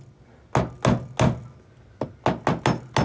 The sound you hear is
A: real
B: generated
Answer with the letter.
A